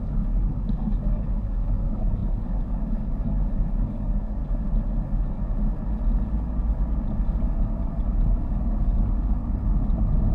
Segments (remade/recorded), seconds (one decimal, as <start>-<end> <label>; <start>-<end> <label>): 0.0-4.4 remade; 4.4-7.6 recorded; 7.6-9.4 remade; 9.4-10.3 recorded